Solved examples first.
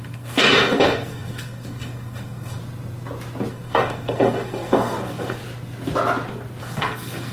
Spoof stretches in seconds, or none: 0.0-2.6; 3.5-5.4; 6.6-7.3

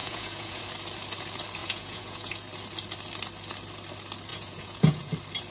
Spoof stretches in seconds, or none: 0.0-0.6; 1.6-2.3; 4.3-5.1

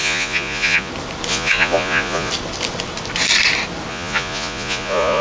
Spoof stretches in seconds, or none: 0.0-0.9; 1.3-2.3; 3.9-5.2

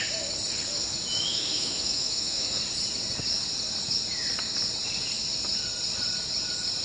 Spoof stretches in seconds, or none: 0.9-2.6

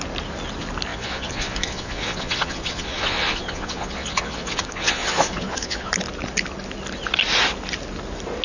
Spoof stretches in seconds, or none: 0.9-5.9

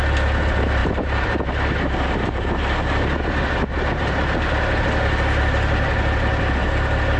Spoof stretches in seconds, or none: 0.8-2.8

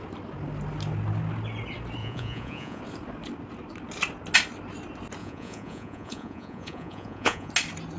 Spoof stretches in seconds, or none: 2.0-2.8; 5.2-7.5